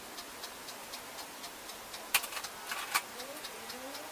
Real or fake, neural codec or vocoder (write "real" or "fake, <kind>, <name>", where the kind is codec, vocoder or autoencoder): real